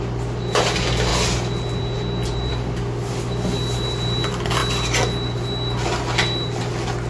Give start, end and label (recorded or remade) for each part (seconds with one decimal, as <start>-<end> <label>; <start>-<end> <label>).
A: 0.0-7.1 recorded